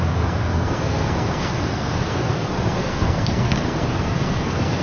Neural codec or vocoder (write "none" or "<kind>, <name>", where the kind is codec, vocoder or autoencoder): codec, SNAC